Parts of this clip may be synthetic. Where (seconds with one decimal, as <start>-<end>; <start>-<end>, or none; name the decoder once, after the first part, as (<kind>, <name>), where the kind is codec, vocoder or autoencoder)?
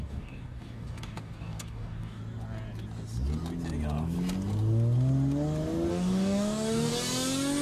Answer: 0.0-2.2 (codec, DAC); 5.9-6.9